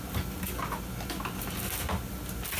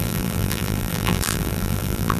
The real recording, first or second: first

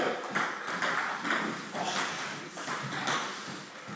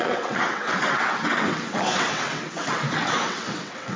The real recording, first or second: first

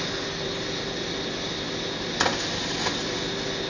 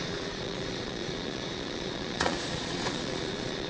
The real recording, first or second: first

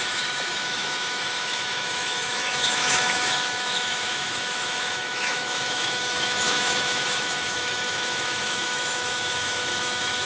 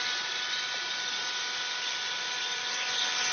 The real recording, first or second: second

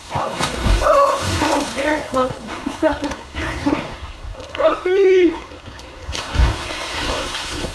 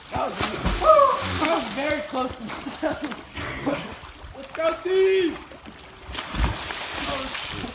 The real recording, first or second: second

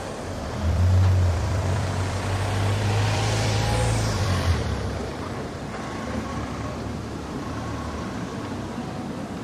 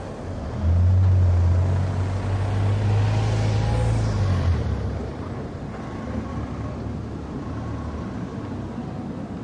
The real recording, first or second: second